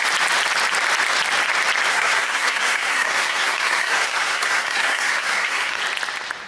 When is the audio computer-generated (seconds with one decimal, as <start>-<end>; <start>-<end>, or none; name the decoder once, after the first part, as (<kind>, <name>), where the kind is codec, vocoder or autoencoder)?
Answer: 1.9-5.8 (codec, SNAC)